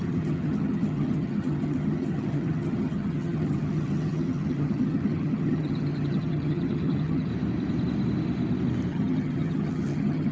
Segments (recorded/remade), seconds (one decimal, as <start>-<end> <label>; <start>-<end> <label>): 0.0-7.3 remade; 7.3-8.9 recorded; 8.9-10.3 remade